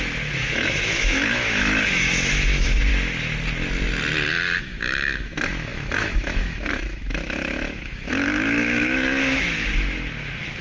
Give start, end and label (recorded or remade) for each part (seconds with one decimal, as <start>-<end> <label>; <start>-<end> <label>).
0.0-2.9 remade; 2.9-4.6 recorded; 4.6-10.6 remade